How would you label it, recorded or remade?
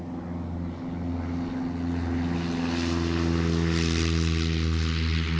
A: recorded